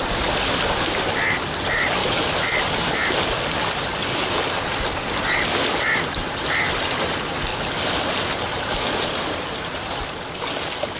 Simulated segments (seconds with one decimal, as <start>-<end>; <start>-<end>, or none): none